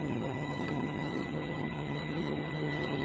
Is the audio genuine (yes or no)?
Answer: no